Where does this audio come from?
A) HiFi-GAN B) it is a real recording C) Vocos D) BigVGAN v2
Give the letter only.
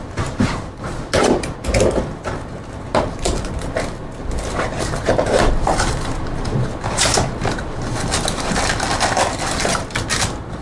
D